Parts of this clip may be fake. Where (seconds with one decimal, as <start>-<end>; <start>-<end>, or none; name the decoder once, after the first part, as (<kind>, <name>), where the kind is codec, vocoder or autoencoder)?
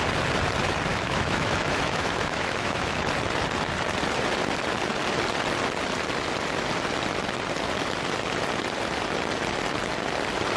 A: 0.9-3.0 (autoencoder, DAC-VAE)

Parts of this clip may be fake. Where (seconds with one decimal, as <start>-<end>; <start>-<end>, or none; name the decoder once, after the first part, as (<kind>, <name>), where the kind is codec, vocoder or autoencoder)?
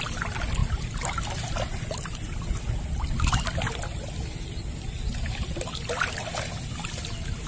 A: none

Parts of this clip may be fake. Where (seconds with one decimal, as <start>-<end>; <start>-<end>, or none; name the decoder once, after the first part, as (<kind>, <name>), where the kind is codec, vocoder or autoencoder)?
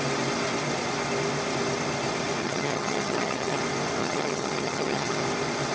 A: 2.4-3.6 (vocoder, HiFi-GAN); 4.0-5.2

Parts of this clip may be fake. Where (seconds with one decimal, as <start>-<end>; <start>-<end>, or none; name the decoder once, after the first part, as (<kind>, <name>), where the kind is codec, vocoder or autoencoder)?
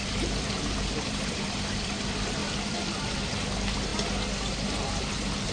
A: 0.0-2.0 (vocoder, BigVGAN v2); 2.4-3.3